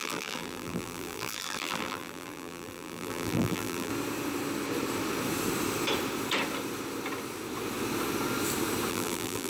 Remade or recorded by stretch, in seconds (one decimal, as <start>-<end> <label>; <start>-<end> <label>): 0.0-3.9 remade; 3.9-8.9 recorded; 8.9-9.5 remade

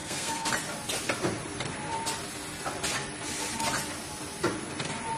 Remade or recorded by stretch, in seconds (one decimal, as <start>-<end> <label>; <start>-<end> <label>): 0.0-0.5 remade; 0.5-5.2 recorded

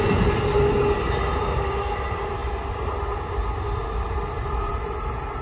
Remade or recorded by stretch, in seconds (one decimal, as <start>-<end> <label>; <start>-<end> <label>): 0.0-5.4 recorded

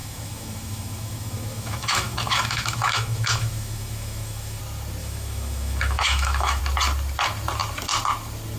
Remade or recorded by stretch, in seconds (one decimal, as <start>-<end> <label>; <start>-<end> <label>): 0.0-4.6 remade; 4.6-5.0 recorded; 5.0-6.6 remade; 6.6-8.6 recorded

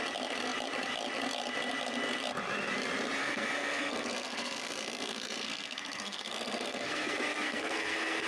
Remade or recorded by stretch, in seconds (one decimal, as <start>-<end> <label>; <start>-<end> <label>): 0.0-3.2 recorded; 3.2-8.3 remade

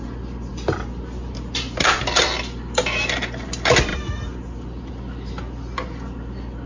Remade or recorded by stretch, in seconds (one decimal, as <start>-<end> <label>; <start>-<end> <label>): 0.0-6.7 recorded

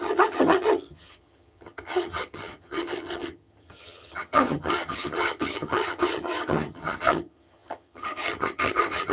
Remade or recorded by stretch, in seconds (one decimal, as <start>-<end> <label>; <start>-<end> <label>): 0.0-9.1 remade